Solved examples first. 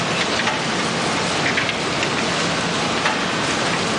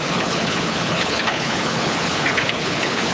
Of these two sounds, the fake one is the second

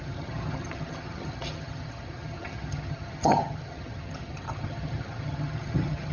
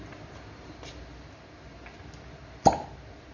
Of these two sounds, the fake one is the first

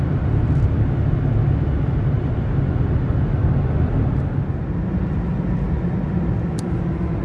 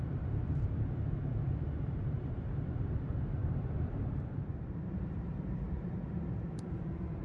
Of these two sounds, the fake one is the second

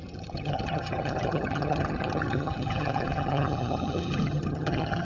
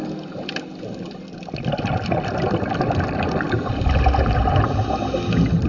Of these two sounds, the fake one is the first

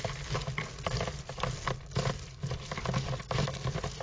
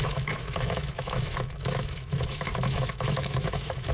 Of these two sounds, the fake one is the second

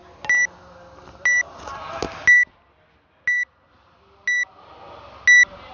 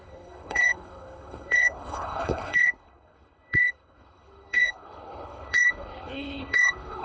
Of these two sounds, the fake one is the second